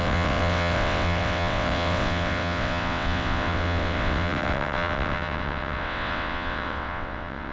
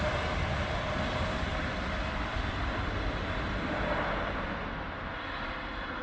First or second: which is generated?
first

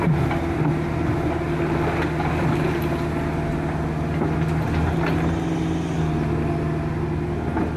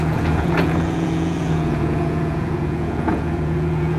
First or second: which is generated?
second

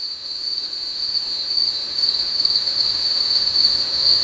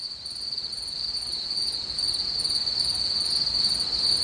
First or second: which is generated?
first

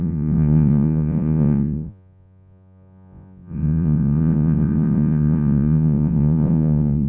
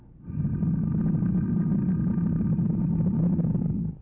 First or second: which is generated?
first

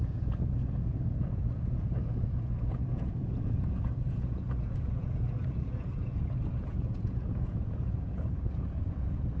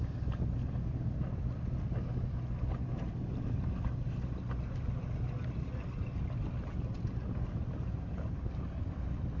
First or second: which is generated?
first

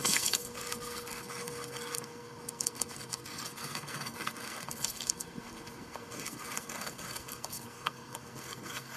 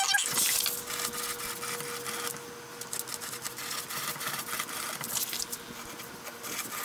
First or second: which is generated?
first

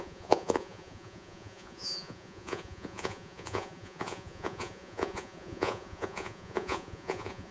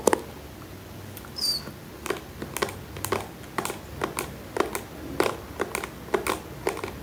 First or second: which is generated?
first